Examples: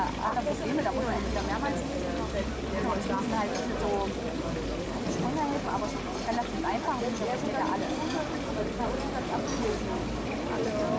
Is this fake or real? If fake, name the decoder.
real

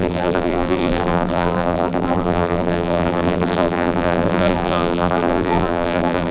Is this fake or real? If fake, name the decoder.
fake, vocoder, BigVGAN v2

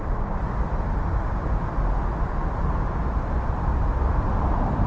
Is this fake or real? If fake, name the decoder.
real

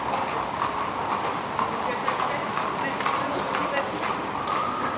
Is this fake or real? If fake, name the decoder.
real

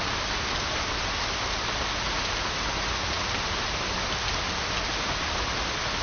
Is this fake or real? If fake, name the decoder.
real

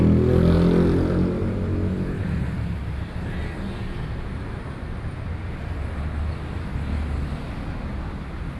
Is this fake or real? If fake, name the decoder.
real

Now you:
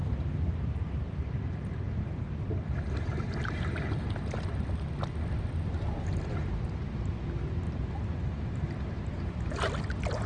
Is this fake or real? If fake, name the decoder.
real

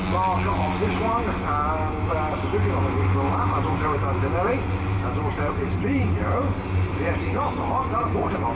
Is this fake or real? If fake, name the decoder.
real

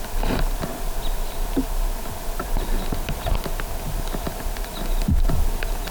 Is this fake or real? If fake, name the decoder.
real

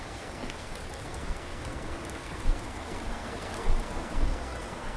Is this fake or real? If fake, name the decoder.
fake, codec, SNAC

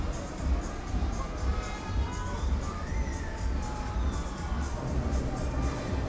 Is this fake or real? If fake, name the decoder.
real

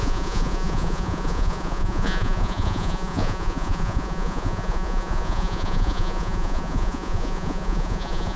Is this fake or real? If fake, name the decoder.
fake, vocoder, Vocos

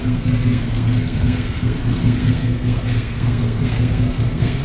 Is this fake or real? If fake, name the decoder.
fake, codec, SNAC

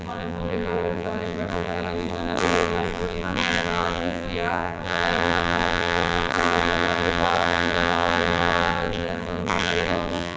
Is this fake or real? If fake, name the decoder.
fake, vocoder, BigVGAN v2